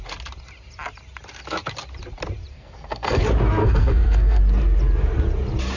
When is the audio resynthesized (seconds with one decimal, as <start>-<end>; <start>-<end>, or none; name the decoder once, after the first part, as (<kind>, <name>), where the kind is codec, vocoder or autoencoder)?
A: 2.5-3.2 (codec, SNAC); 3.6-4.4